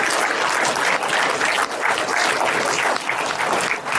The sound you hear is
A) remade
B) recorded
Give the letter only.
B